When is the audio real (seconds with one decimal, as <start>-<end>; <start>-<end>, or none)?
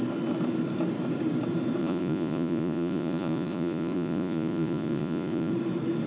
0.0-1.8; 5.5-6.1